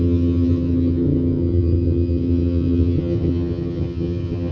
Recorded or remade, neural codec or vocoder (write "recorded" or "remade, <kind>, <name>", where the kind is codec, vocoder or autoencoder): remade, vocoder, HiFi-GAN